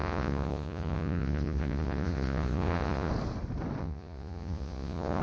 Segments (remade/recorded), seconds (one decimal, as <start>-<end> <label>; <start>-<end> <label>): 0.0-3.1 remade; 3.1-3.8 recorded; 3.8-5.2 remade